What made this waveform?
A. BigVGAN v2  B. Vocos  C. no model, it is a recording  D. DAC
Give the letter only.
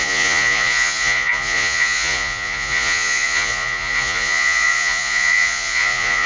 B